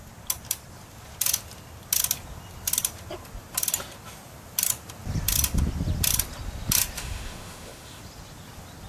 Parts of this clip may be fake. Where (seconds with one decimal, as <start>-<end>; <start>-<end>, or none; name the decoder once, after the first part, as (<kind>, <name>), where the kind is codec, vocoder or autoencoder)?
7.0-8.0 (autoencoder, DAC-VAE)